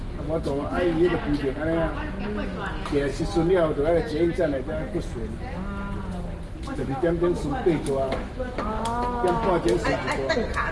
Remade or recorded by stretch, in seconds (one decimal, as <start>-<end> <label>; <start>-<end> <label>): 0.0-6.8 recorded; 6.8-9.3 remade; 9.3-10.7 recorded